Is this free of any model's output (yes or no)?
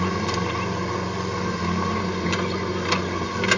yes